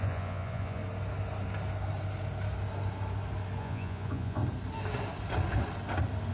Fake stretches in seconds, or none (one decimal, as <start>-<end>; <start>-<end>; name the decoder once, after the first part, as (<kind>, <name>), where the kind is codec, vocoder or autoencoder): 0.0-0.8 (vocoder, Vocos); 3.6-4.4